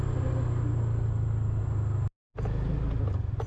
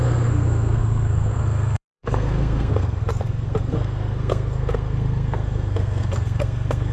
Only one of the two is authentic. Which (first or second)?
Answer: first